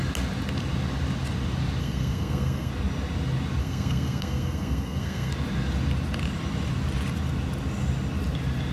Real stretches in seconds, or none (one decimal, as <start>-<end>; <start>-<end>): 0.0-1.8; 2.7-3.6; 5.3-8.7